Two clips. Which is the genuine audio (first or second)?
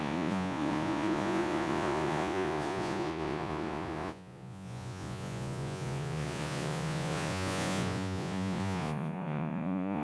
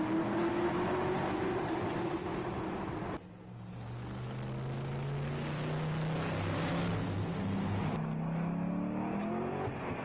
second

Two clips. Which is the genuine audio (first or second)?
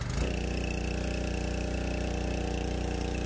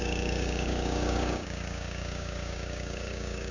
first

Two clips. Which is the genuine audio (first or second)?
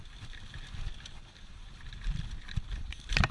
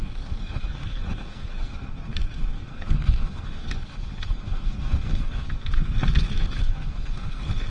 first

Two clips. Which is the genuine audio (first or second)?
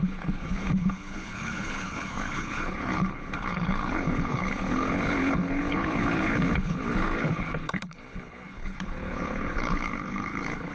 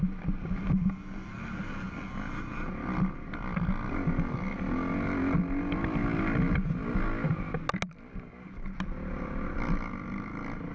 second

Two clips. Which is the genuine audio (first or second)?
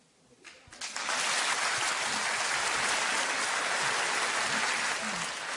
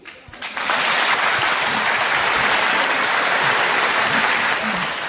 first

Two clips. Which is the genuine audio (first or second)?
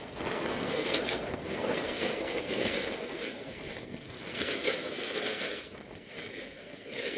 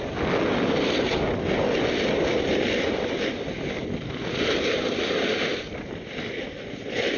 second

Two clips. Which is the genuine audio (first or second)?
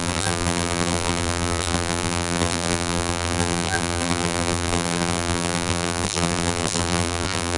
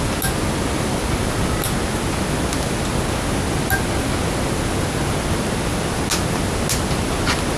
second